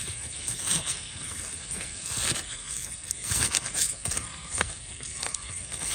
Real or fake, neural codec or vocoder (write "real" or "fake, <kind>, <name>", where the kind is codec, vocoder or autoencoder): fake, codec, SNAC